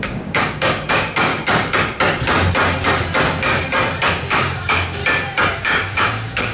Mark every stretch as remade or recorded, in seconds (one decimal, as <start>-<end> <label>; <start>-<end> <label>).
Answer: 0.0-1.3 remade; 1.3-4.3 recorded; 4.3-5.0 remade; 5.0-5.6 recorded; 5.6-6.5 remade